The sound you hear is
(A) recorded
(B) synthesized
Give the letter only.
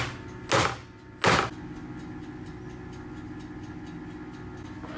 A